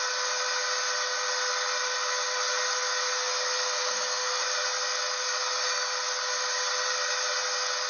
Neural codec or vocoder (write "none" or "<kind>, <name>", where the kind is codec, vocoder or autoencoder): none